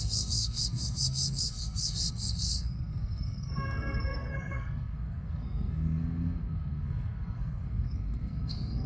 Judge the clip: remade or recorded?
remade